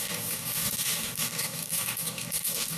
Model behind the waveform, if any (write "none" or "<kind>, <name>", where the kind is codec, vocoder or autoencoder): codec, DAC